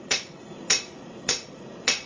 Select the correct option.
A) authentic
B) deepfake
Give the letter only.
B